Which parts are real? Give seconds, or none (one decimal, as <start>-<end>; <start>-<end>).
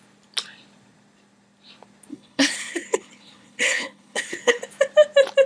0.0-2.1; 4.6-5.5